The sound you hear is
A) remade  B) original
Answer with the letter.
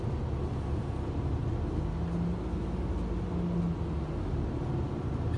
B